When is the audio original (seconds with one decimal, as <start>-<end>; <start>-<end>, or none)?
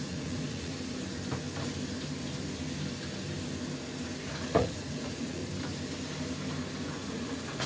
0.7-4.3; 5.4-6.9